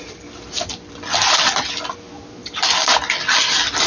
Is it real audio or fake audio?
real